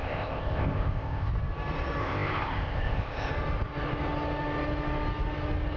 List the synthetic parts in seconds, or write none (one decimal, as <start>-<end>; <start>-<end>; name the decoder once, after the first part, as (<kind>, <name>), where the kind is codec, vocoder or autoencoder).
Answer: 0.0-1.3 (codec, ZipCodec); 2.0-3.3